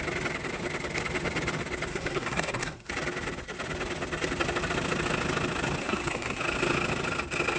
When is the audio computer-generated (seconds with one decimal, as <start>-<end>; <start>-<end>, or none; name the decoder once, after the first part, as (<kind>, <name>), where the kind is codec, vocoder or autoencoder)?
1.9-2.9 (codec, SNAC); 5.8-6.4